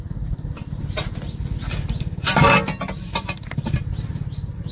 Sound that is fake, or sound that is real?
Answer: real